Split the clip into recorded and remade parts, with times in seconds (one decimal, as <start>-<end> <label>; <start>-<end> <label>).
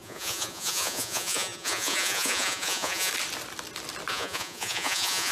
0.0-3.1 remade; 3.1-4.1 recorded; 4.1-5.3 remade